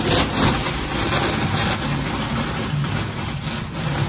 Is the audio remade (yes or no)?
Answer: no